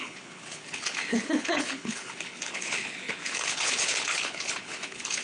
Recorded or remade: remade